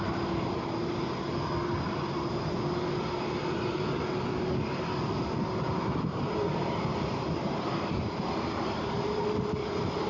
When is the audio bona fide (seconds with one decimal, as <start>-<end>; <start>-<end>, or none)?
1.3-6.5